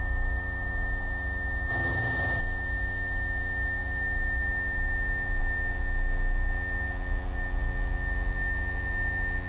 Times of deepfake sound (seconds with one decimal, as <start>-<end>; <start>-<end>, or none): 1.7-2.4